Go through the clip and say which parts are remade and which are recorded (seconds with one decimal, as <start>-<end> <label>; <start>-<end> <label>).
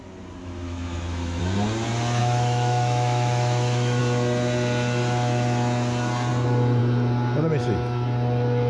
0.0-0.4 recorded; 0.4-1.4 remade; 1.4-2.2 recorded; 2.2-4.0 remade; 4.0-8.7 recorded